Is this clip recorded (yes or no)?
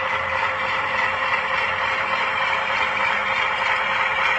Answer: no